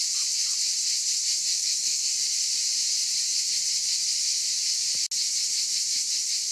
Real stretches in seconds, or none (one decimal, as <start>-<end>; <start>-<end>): 0.0-1.5; 2.1-6.5